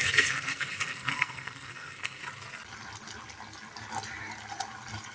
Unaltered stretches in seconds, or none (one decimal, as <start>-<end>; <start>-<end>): 2.2-5.1